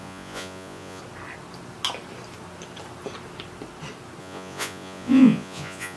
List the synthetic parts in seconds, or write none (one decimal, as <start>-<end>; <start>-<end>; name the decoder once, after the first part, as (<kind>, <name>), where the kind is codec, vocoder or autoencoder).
0.0-1.0 (vocoder, Vocos); 4.2-6.0